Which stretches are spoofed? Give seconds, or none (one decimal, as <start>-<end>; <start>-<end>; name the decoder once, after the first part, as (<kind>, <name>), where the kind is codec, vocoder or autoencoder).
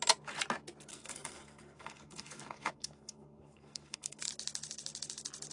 0.9-4.2 (codec, SNAC)